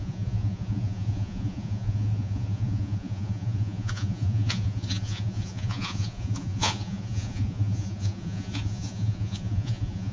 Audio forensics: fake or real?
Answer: fake